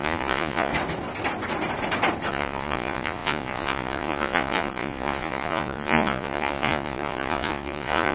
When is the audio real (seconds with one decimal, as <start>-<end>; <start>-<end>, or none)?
0.7-2.3